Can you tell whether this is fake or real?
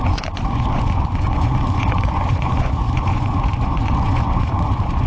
fake